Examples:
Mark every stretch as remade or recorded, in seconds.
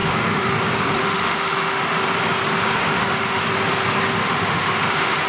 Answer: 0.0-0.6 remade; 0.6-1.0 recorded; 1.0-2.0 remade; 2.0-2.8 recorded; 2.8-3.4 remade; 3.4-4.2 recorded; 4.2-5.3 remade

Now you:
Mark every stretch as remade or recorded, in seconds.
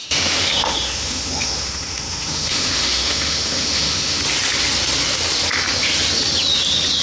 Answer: 0.0-4.2 remade; 4.2-7.0 recorded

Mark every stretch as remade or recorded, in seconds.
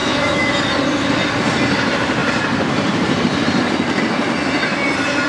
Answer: 0.0-0.5 remade; 0.5-5.3 recorded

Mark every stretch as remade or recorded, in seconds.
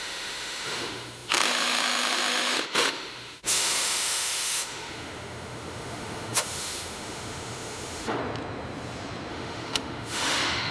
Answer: 0.0-8.2 remade; 8.2-9.3 recorded; 9.3-10.7 remade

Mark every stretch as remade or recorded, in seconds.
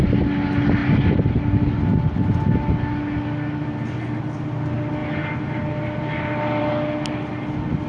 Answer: 0.0-7.9 recorded